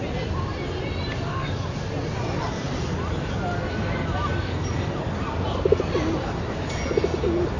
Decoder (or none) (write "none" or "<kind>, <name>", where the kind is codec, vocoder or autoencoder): none